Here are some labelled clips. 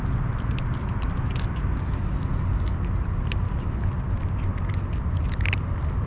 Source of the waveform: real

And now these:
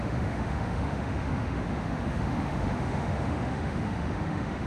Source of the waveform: fake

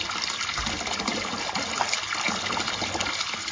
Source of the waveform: real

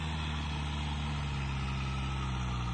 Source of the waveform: real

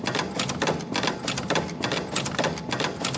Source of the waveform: real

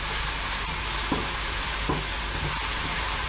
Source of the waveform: fake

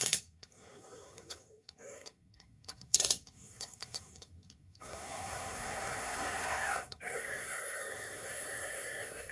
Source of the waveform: fake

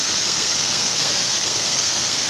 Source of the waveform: fake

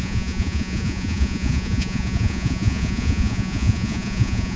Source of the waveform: fake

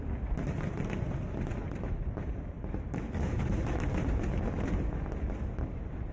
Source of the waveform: real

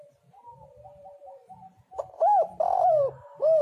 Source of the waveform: fake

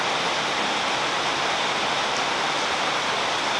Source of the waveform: real